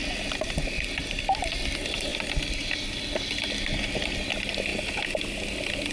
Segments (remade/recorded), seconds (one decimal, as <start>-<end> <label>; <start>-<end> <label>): 0.0-5.9 recorded